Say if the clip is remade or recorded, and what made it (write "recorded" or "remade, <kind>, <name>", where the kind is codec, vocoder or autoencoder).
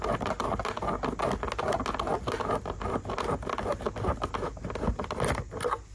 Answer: recorded